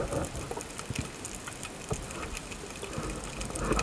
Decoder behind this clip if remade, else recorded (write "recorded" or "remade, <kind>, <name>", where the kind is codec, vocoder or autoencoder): recorded